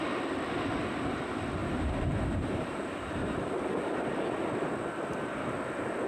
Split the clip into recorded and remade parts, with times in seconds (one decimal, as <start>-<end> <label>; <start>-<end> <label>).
0.0-1.6 recorded; 1.6-4.1 remade; 4.1-6.1 recorded